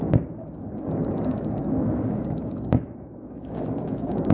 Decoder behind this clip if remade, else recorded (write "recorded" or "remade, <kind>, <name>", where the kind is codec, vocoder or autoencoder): remade, codec, DAC